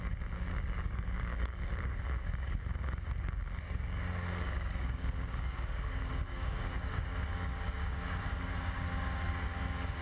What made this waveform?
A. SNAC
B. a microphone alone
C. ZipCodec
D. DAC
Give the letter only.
D